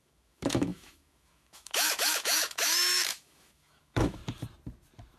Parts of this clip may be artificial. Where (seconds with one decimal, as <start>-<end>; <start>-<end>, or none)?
0.0-4.2